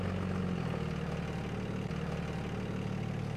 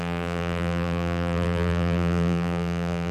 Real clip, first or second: first